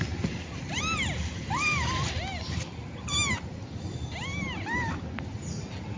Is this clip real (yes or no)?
yes